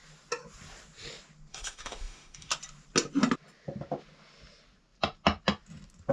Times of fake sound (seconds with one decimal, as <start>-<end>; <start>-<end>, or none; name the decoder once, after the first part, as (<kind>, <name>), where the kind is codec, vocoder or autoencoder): 1.5-2.5 (autoencoder, DAC-VAE)